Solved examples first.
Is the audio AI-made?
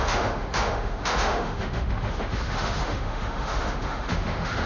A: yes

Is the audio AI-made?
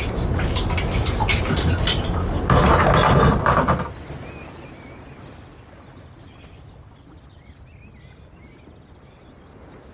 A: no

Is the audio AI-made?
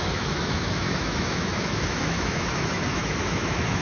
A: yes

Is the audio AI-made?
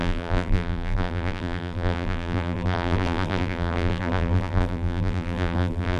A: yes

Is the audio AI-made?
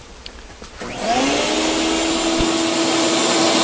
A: no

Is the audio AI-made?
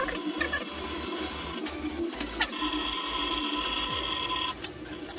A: no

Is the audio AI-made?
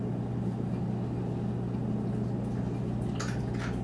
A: no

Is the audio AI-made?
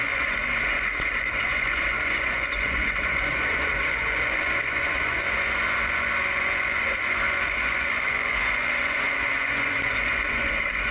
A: yes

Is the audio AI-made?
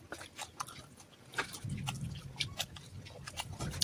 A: no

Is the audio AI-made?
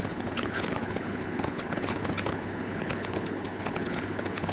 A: yes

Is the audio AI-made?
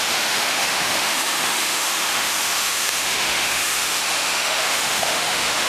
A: yes